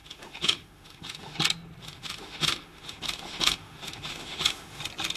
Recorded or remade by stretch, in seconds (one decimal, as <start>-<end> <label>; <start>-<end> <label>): 0.0-1.4 remade; 1.4-1.8 recorded; 1.8-4.8 remade; 4.8-5.2 recorded